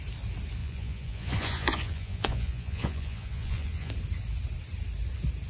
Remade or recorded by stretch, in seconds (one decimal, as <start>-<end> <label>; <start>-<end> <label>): 0.0-0.6 recorded; 0.6-3.9 remade; 3.9-5.5 recorded